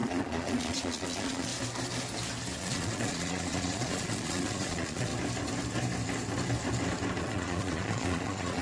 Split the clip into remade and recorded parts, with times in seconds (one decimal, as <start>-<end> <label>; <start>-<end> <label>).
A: 0.0-1.5 remade; 1.5-2.6 recorded; 2.6-5.1 remade; 5.1-7.2 recorded; 7.2-8.6 remade